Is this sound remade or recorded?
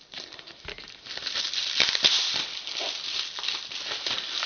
recorded